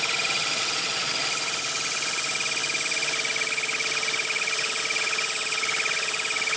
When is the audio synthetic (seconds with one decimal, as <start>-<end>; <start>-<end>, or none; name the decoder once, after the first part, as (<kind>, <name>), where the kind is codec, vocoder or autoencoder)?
0.4-1.1 (vocoder, Vocos)